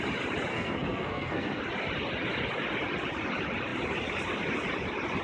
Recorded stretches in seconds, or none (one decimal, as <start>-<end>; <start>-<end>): 0.0-0.5; 1.6-5.2